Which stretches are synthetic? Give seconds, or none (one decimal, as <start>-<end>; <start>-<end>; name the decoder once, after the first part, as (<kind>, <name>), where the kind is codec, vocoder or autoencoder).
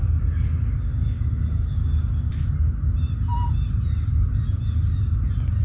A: 0.9-2.3 (codec, DAC)